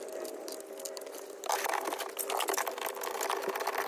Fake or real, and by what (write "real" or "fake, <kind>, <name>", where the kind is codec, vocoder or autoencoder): real